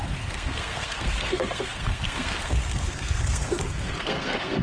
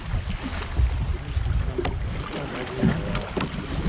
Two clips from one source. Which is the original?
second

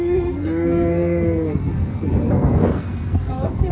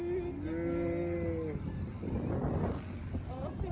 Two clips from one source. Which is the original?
second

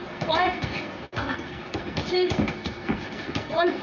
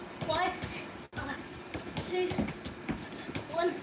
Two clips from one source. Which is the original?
second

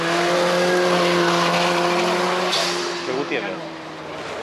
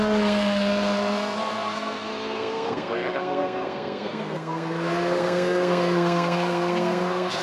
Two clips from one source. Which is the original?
first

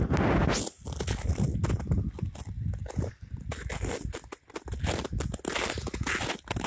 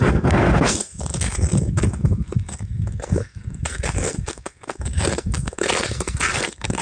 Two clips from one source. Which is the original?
first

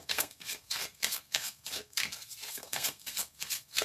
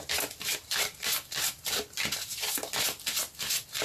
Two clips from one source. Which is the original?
second